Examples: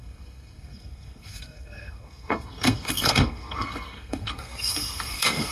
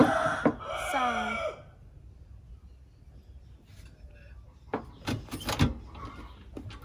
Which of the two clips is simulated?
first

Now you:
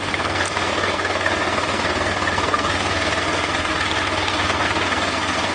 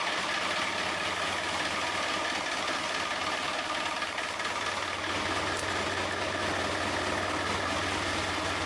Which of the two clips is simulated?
first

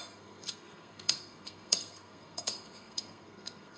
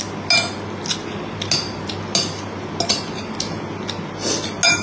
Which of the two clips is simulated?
first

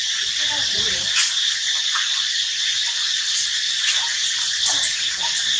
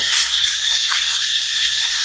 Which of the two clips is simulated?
second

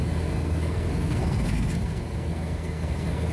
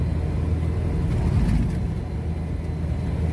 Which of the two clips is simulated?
first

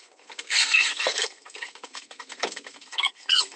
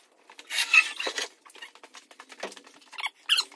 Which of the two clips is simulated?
first